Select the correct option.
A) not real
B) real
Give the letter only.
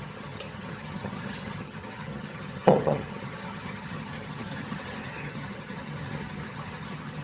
A